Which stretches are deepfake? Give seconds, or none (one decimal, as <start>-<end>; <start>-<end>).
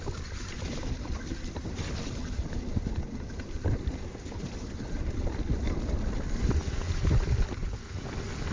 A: none